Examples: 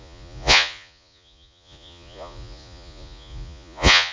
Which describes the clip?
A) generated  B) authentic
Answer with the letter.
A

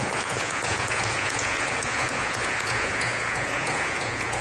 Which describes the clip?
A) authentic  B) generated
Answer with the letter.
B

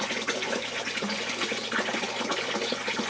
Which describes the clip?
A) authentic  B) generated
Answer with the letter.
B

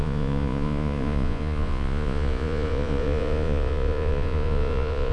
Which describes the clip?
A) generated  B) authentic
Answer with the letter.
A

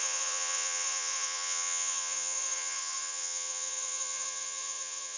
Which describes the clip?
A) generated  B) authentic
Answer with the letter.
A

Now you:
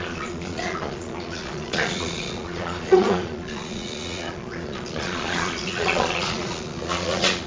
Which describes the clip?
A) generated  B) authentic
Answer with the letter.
A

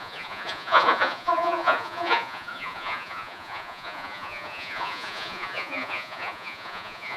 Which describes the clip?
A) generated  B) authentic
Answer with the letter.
A